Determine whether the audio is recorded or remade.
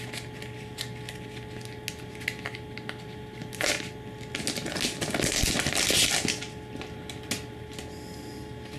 recorded